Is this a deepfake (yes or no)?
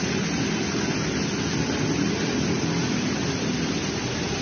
no